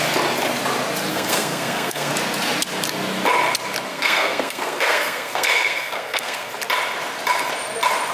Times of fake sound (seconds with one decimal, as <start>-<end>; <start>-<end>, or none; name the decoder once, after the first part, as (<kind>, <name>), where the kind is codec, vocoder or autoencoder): 1.1-2.1 (codec, SNAC); 3.9-6.5